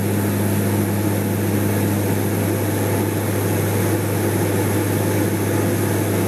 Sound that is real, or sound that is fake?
real